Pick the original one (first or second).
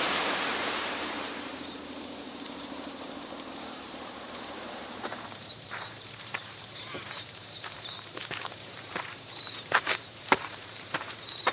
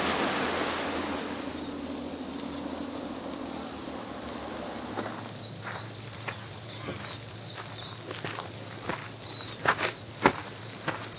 second